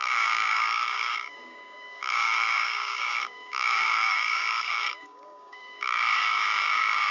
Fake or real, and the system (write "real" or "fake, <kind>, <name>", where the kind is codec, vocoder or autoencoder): fake, codec, DAC